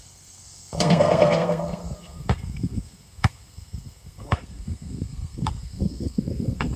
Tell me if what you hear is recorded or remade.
remade